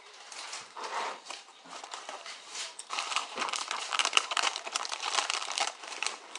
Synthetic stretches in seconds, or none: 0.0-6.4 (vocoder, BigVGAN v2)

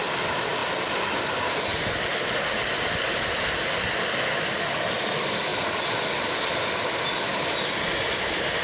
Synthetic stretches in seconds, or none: none

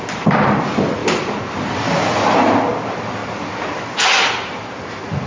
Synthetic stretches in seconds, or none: 1.0-2.1 (vocoder, BigVGAN v2)